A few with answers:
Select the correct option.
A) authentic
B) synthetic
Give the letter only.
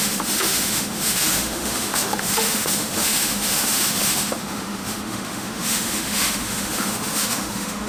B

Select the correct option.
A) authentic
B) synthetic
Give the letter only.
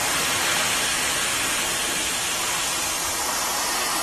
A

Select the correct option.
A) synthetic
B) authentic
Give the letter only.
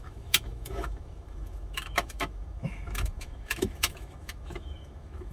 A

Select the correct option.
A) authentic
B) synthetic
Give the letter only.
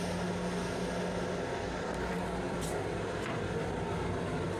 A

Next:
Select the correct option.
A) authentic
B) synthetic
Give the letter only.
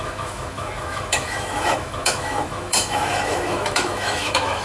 B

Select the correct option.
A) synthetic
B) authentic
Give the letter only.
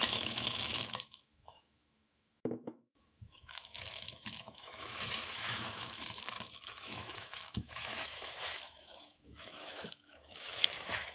A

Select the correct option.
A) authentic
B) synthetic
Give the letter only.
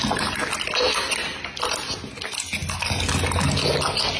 A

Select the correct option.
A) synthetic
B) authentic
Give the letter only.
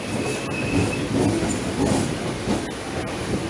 B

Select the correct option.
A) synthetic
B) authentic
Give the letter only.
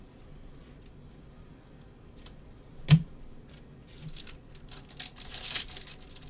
B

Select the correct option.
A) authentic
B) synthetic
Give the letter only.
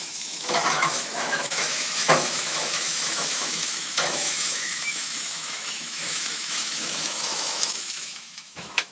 B